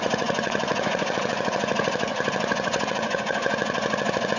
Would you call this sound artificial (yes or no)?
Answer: yes